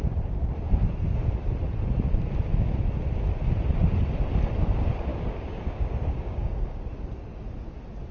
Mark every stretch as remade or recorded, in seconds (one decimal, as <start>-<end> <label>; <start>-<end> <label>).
0.0-5.1 recorded; 5.1-6.9 remade; 6.9-8.1 recorded